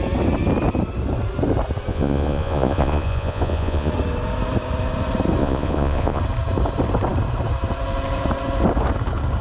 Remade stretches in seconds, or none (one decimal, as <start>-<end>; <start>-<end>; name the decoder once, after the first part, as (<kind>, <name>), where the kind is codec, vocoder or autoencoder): 1.9-3.9 (vocoder, Vocos); 5.4-6.2